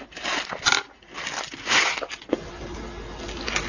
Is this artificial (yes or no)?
no